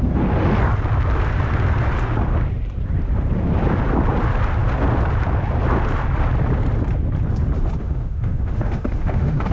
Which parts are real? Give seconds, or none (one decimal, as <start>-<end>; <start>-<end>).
0.0-7.8